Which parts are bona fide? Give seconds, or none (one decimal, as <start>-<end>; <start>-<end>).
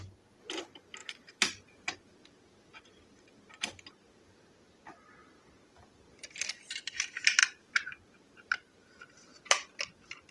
0.0-1.0; 4.4-5.2; 6.9-7.4